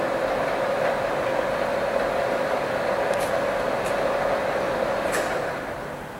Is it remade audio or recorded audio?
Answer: recorded